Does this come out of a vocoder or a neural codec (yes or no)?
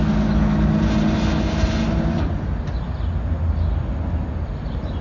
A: no